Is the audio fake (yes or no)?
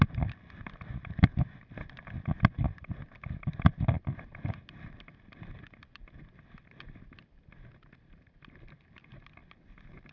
no